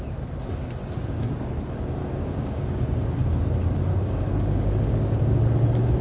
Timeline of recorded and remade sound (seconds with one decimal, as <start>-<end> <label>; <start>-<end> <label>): 0.0-0.8 recorded; 0.8-1.5 remade; 1.5-2.0 recorded; 2.0-3.2 remade; 3.2-3.9 recorded; 3.9-5.2 remade; 5.2-6.0 recorded